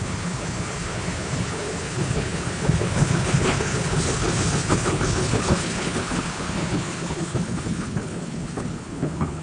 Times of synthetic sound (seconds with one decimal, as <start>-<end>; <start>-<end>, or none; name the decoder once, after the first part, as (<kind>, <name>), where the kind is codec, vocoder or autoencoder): 0.0-9.4 (codec, HILCodec)